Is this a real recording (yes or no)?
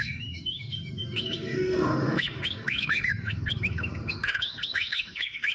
no